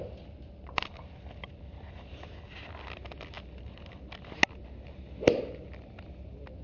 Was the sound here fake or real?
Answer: real